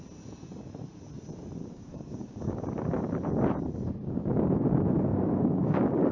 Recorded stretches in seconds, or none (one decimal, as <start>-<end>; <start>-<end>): 0.0-1.6; 2.6-5.1